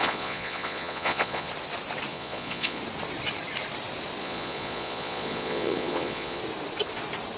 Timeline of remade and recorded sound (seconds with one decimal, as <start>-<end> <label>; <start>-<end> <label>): 0.0-1.5 remade; 1.5-2.1 recorded; 2.1-2.8 remade; 2.8-4.2 recorded; 4.2-6.4 remade; 6.4-7.4 recorded